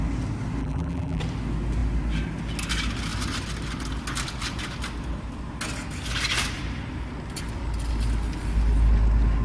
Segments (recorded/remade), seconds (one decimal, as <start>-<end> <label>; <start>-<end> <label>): 0.0-0.6 recorded; 0.6-1.2 remade; 1.2-9.4 recorded